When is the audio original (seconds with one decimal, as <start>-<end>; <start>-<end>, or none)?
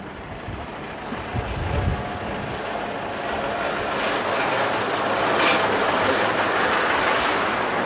1.3-5.9